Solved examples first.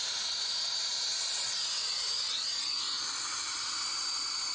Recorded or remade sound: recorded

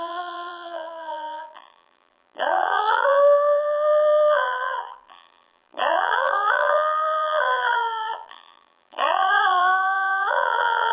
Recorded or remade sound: remade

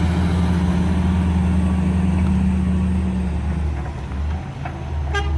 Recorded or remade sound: recorded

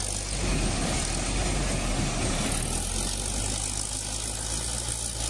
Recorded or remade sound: recorded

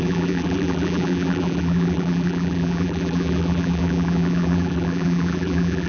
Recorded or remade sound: remade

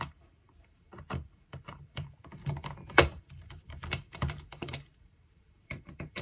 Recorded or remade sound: remade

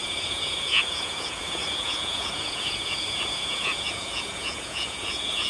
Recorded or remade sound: remade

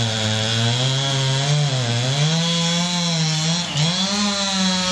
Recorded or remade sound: recorded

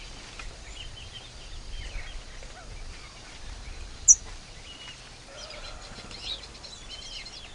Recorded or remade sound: recorded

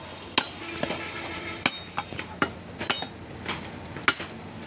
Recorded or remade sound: recorded